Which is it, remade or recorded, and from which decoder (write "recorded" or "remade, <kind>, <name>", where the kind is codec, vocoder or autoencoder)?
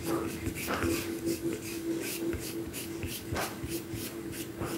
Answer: remade, codec, DAC